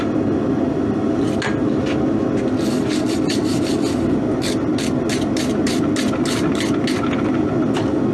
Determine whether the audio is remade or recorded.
recorded